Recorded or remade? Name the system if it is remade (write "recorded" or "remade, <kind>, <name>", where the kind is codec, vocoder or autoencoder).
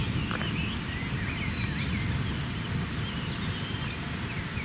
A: recorded